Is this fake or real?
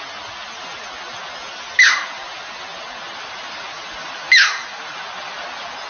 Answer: real